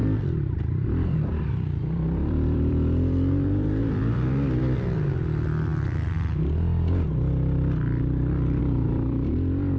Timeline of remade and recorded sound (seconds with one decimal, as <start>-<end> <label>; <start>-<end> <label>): 0.0-4.6 remade; 4.6-9.8 recorded